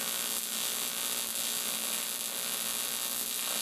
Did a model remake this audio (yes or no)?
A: no